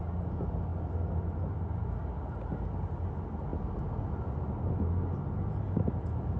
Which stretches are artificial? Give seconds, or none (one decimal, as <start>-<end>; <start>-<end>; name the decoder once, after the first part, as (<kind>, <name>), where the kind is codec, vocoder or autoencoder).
none